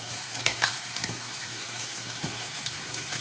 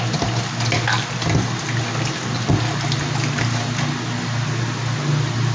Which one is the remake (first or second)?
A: first